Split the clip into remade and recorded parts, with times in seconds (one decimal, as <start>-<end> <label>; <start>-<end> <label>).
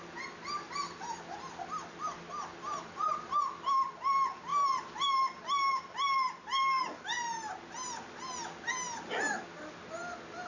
0.0-10.5 recorded